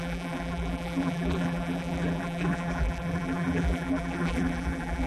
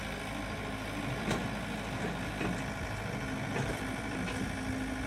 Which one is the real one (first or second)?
second